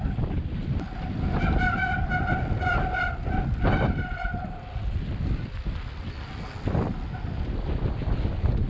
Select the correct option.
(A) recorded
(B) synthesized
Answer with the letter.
A